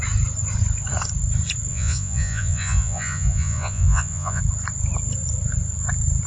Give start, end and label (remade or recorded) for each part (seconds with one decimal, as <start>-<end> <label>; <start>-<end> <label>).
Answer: 0.0-1.7 recorded; 1.7-4.4 remade; 4.4-6.3 recorded